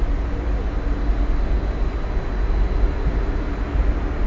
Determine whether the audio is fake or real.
real